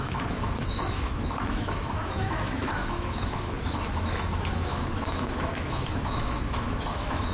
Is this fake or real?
fake